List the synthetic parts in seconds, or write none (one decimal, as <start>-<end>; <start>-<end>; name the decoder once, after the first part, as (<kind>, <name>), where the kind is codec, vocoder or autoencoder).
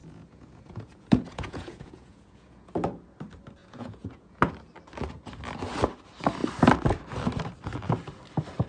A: 0.0-2.7 (vocoder, Vocos); 3.6-4.4